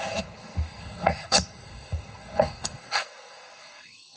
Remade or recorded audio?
remade